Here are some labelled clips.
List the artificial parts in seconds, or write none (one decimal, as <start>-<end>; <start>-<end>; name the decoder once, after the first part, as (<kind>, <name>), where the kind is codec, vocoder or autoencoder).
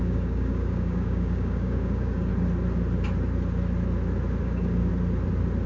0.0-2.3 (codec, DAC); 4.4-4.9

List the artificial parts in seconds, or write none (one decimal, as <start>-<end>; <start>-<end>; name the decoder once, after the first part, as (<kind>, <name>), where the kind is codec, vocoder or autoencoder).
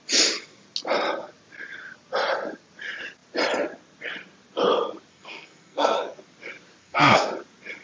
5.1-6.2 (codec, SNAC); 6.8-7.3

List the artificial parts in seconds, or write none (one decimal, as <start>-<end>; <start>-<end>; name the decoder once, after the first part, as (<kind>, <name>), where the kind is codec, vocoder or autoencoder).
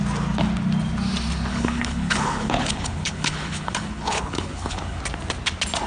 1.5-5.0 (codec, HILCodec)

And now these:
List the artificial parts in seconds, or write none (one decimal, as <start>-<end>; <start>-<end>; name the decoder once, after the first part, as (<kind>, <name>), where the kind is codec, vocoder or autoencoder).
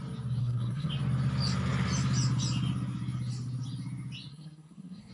0.4-0.9 (codec, SNAC); 4.3-5.1